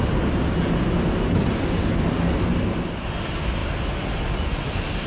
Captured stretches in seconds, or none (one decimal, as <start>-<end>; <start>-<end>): 0.0-5.1

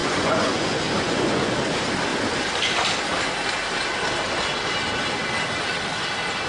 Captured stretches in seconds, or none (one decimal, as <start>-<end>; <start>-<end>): 1.5-6.5

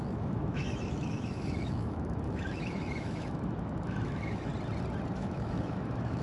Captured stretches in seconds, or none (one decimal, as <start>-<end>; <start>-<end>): 4.5-5.1